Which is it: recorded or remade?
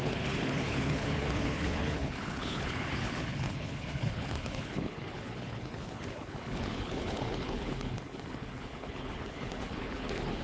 remade